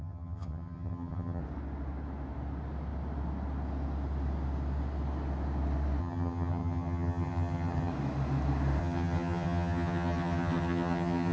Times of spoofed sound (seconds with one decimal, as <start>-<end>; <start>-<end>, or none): 0.0-1.4; 6.0-7.9; 8.8-11.3